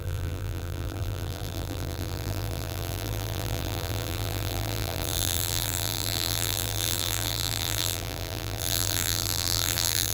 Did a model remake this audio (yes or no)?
yes